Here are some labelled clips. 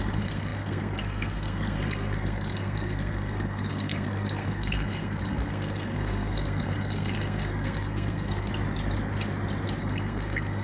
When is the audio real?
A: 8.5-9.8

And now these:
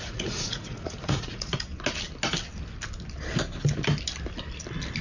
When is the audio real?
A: 1.7-5.0

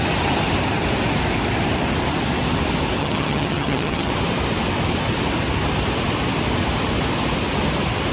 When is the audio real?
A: 0.0-3.0; 4.1-8.1

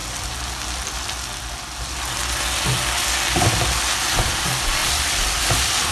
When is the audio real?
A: 0.0-5.9

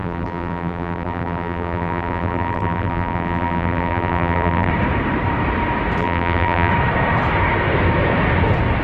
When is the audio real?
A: 4.7-6.0; 6.7-8.8

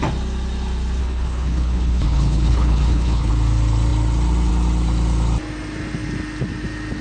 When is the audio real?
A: 0.0-1.0; 3.3-7.0